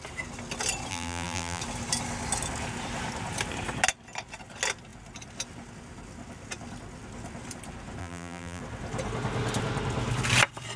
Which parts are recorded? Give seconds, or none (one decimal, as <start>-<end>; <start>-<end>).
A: 0.0-0.9; 1.6-8.0; 8.6-10.8